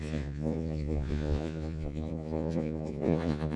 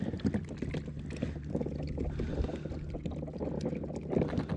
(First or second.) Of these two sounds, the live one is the second